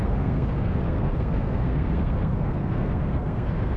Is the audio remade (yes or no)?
yes